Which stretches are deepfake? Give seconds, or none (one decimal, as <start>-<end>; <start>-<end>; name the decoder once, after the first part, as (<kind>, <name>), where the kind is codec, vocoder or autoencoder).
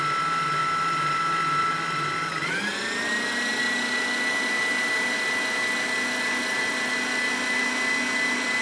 none